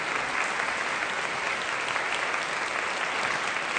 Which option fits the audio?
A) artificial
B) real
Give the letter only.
B